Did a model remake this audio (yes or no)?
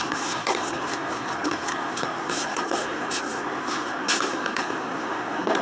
yes